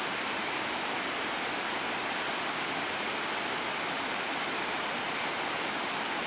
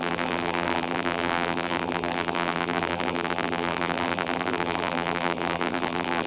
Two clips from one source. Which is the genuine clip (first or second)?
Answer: first